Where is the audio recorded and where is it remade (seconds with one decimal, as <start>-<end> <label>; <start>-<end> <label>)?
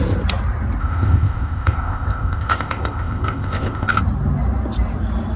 0.0-0.8 recorded; 0.8-4.0 remade; 4.0-5.4 recorded